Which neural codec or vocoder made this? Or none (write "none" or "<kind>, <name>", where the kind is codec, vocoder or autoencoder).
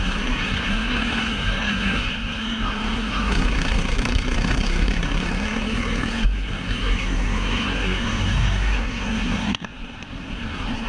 codec, SNAC